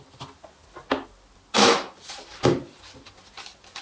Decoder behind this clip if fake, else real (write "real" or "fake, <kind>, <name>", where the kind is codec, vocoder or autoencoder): real